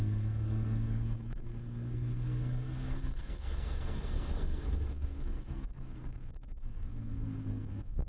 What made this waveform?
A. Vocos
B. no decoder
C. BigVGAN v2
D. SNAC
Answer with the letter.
D